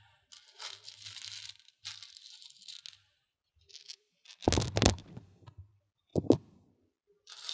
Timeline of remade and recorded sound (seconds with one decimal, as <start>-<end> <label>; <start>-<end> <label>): 0.0-7.5 recorded